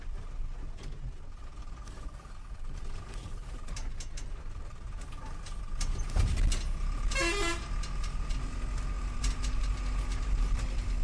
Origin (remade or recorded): recorded